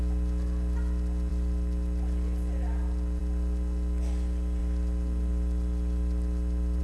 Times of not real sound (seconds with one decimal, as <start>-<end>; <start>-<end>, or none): 1.3-3.2; 4.6-6.8